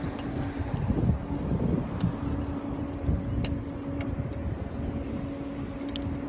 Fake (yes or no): no